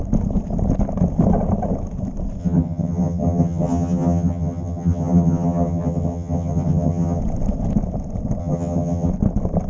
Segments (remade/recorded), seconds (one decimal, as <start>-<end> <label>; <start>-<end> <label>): 0.0-2.4 recorded; 2.4-7.2 remade; 7.2-8.4 recorded; 8.4-9.1 remade; 9.1-9.7 recorded